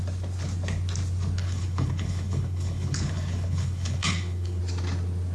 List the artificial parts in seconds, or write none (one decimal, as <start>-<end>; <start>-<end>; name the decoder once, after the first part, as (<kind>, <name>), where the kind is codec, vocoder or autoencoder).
1.4-4.6 (codec, HILCodec)